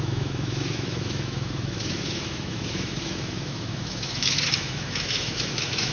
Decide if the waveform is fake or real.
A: fake